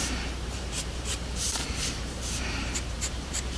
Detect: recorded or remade remade